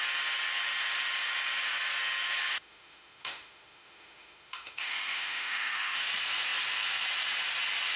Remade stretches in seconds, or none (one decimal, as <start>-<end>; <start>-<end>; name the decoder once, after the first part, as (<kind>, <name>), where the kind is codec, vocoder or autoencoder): 2.5-6.1 (autoencoder, DAC-VAE)